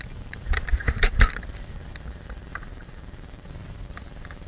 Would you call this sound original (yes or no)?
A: no